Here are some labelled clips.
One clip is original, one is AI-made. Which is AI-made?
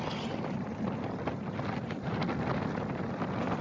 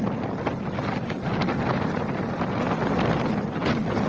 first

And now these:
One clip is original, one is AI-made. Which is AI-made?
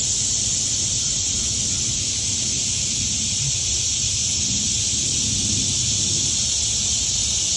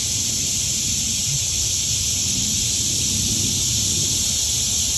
second